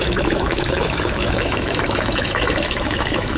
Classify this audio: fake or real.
fake